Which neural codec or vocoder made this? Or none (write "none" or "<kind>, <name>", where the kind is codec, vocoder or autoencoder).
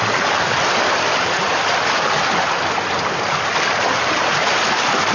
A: none